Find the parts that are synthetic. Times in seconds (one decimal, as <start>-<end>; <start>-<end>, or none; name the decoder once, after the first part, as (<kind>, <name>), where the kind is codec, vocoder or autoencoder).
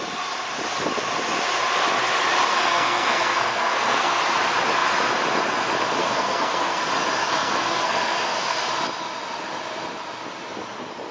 2.5-4.2 (codec, SNAC); 6.0-6.8; 7.2-8.7